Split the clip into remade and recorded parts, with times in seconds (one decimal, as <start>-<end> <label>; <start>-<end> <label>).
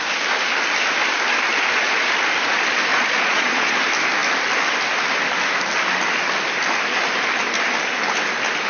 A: 0.0-2.9 recorded; 2.9-3.8 remade; 3.8-8.7 recorded